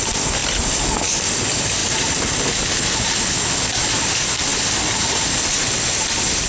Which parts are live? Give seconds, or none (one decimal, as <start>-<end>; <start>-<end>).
0.0-6.5